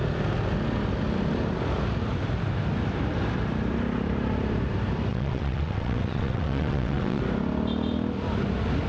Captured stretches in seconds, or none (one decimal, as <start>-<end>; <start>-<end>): 0.0-5.1; 7.2-8.9

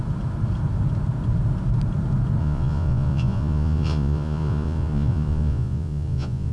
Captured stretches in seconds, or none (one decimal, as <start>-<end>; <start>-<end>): 0.0-2.4

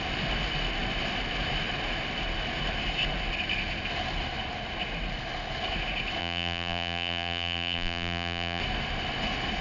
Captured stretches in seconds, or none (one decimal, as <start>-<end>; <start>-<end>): 0.0-6.2; 8.6-9.6

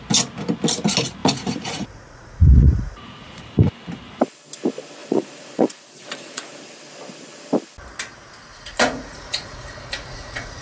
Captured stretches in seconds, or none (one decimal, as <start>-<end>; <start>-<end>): 0.0-1.2; 3.7-5.0; 6.6-8.5

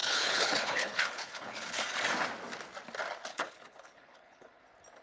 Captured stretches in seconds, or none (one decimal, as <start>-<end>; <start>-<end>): 1.8-3.3; 4.6-5.0

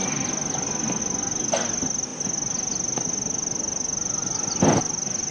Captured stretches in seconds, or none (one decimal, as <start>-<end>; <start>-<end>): 0.0-5.3

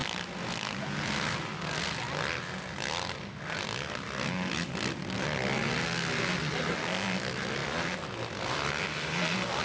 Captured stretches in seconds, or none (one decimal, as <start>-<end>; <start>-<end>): 0.0-9.6

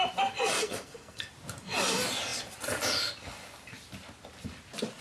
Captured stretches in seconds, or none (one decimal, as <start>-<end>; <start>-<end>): 0.0-0.6; 1.3-5.0